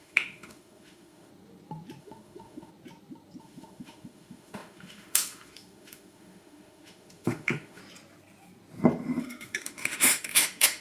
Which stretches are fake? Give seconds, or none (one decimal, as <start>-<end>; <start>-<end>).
0.0-1.3; 2.0-2.7; 3.4-7.8; 9.2-10.8